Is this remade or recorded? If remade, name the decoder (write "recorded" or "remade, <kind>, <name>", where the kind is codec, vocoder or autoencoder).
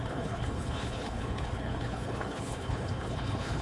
remade, codec, HILCodec